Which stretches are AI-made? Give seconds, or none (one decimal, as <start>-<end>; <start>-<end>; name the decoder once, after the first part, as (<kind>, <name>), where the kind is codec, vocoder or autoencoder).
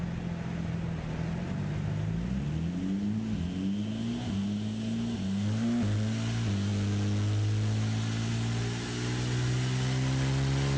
none